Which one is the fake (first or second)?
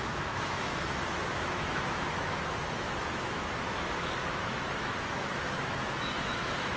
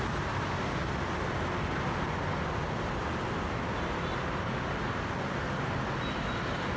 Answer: first